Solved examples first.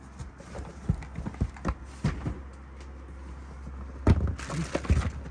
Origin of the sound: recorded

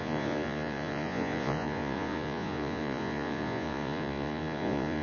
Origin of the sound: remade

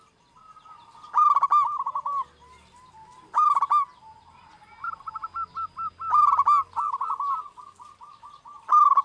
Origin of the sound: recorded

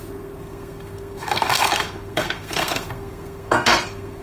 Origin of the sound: remade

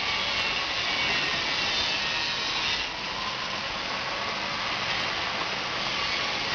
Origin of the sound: recorded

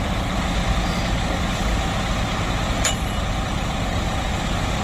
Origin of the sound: recorded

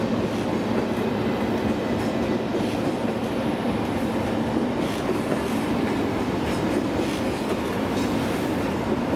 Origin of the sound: recorded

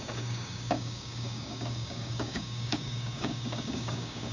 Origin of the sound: remade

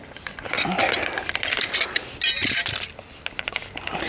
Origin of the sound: recorded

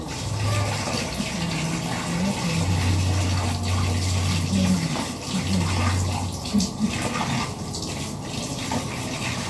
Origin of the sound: recorded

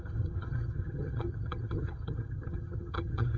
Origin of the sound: remade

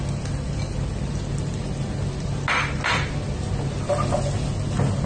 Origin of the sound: recorded